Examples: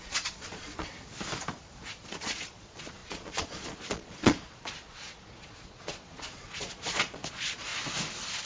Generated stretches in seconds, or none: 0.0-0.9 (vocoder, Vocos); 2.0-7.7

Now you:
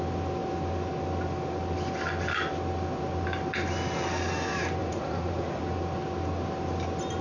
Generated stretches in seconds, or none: 4.8-5.6 (vocoder, Vocos)

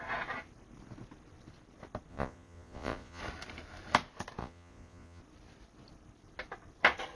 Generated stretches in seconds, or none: 2.1-3.2 (vocoder, Vocos); 4.4-5.2

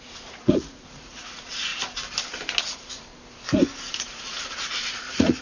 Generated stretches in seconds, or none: 0.0-1.7 (vocoder, Vocos); 2.6-3.1; 3.9-5.4

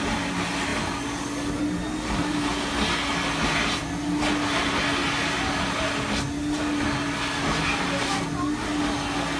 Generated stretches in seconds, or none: none

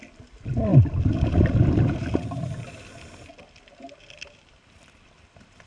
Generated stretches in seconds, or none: none